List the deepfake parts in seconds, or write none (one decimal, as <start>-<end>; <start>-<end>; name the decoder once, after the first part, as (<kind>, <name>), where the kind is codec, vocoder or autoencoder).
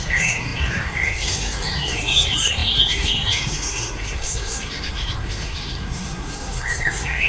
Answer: 0.0-7.3 (codec, SNAC)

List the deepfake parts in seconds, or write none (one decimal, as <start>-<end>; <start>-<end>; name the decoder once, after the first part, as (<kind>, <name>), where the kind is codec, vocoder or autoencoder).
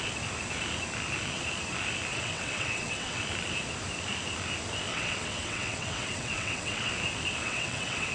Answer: 2.1-3.2 (vocoder, WaveNeXt); 4.9-6.9; 7.4-8.1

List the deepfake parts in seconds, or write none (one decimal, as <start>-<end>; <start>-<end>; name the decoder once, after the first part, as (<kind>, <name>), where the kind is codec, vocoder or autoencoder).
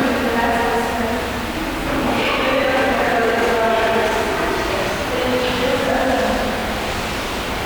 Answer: none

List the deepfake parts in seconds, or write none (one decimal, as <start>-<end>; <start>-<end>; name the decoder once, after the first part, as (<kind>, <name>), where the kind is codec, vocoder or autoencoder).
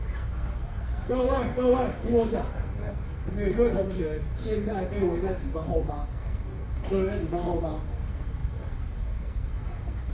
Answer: 0.0-10.1 (codec, SNAC)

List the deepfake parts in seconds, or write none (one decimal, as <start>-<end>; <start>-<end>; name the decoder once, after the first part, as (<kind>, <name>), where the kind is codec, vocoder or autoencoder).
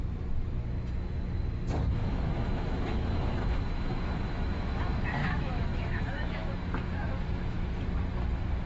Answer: 2.0-4.7 (autoencoder, DAC-VAE); 5.2-6.5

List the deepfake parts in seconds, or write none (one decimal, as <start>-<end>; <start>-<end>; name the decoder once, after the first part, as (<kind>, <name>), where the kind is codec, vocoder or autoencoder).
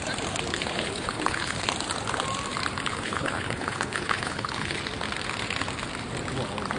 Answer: 0.5-1.7 (codec, HILCodec); 2.9-4.8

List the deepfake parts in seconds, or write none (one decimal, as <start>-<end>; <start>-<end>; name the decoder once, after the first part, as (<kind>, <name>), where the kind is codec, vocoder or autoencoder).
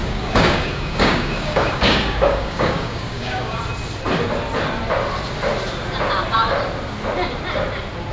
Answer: 0.0-3.6 (codec, DAC)